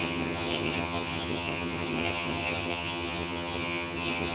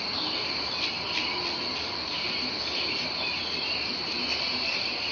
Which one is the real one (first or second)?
second